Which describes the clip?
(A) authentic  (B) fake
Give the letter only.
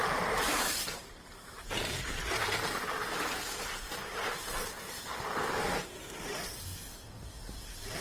B